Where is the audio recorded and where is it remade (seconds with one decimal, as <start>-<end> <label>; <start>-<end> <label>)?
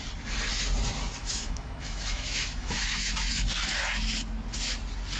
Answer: 0.0-1.2 recorded; 1.2-3.4 remade; 3.4-5.2 recorded